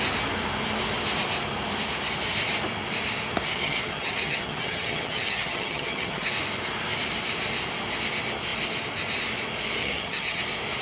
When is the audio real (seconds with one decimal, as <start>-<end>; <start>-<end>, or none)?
0.0-3.5; 6.3-9.8; 10.4-10.8